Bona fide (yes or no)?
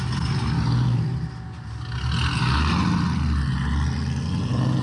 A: yes